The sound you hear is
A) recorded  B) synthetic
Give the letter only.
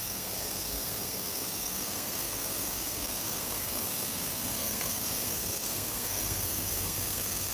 B